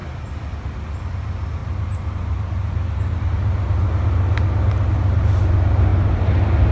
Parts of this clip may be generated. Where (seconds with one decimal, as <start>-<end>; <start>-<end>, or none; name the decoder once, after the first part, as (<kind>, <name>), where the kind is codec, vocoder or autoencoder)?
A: 1.6-3.2 (vocoder, BigVGAN v2); 5.9-6.7